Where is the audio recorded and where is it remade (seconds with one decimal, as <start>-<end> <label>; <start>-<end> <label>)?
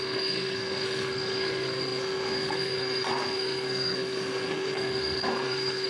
0.0-5.9 remade